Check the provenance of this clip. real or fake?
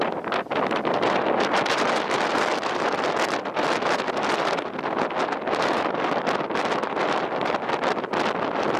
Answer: real